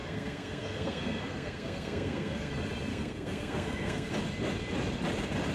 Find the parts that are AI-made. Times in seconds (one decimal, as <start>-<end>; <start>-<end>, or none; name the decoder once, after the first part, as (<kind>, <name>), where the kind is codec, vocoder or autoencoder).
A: 0.0-2.5 (codec, SNAC); 2.9-4.1